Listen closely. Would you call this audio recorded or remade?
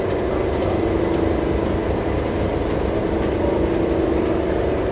recorded